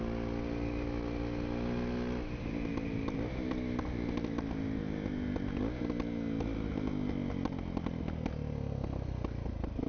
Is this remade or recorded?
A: recorded